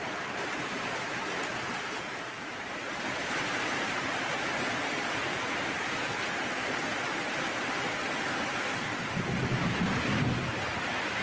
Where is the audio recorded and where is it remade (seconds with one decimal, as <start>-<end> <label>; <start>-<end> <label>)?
0.0-2.5 recorded; 2.5-5.8 remade; 5.8-11.2 recorded